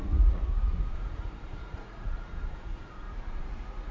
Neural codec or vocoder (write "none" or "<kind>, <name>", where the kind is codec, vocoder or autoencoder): vocoder, Vocos